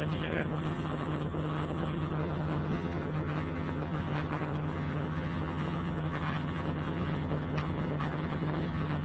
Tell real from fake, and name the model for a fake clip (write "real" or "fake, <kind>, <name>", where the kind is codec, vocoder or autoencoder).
fake, vocoder, HiFi-GAN